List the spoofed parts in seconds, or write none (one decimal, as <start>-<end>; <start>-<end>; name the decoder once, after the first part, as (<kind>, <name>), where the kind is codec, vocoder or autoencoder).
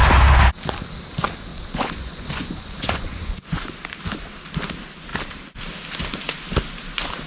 1.5-3.7 (vocoder, Vocos)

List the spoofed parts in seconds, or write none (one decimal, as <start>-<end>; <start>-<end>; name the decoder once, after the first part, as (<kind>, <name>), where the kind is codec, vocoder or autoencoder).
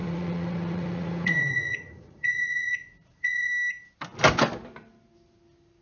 0.0-3.5 (vocoder, Vocos)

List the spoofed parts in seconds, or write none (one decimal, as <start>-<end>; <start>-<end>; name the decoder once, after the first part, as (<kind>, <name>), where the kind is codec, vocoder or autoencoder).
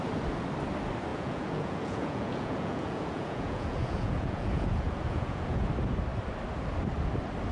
1.1-5.6 (vocoder, Vocos)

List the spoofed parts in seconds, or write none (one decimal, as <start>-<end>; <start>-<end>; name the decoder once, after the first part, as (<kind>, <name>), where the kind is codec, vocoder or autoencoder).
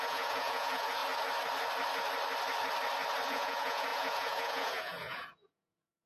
0.0-1.0 (vocoder, Vocos); 3.3-6.1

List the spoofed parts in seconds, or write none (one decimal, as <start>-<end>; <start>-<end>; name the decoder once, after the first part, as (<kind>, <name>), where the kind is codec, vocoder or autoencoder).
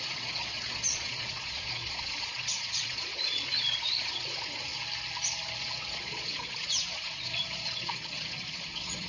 0.0-4.7 (vocoder, Vocos); 5.6-9.1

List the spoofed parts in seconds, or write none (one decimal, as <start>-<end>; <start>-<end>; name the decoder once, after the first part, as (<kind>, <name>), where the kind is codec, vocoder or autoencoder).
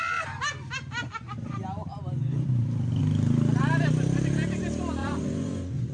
5.0-5.9 (vocoder, Vocos)